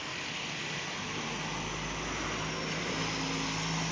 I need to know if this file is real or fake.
real